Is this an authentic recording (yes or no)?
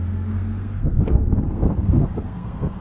no